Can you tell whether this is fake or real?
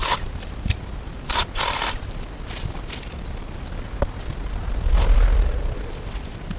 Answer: fake